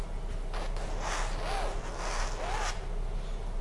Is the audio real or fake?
real